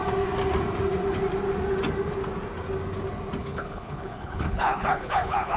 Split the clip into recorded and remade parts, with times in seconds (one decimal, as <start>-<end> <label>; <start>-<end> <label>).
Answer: 0.0-3.4 recorded; 3.4-5.6 remade